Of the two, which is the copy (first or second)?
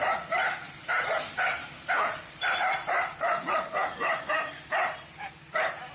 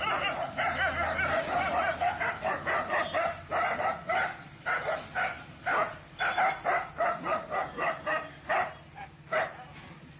first